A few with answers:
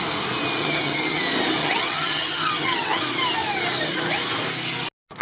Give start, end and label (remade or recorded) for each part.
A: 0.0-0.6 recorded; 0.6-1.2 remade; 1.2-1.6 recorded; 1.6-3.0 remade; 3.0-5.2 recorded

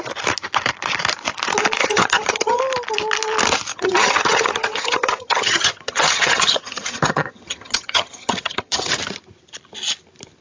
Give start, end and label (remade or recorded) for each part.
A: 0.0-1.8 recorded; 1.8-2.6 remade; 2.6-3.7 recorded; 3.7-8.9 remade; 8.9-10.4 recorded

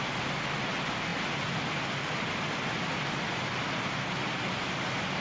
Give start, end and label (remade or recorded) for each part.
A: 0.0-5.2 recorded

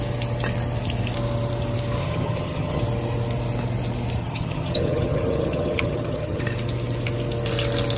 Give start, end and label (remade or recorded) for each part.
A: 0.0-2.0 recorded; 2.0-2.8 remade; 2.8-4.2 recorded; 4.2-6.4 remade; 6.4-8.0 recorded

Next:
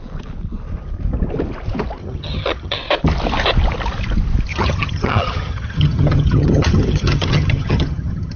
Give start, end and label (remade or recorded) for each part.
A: 0.0-2.0 recorded; 2.0-2.8 remade; 2.8-4.5 recorded; 4.5-8.4 remade